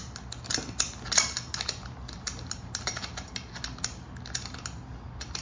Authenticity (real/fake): real